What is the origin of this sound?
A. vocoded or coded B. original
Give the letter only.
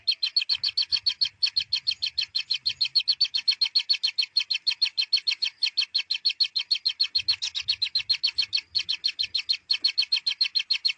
B